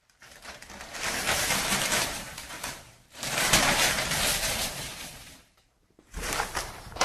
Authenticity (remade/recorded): remade